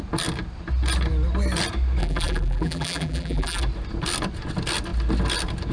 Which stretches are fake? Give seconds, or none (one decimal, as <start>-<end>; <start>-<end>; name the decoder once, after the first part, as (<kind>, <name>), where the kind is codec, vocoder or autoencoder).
2.0-3.6 (vocoder, BigVGAN v2)

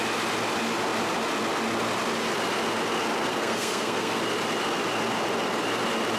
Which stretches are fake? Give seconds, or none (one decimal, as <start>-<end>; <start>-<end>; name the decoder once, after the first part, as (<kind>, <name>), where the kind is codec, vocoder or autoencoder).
3.3-4.2 (codec, SNAC)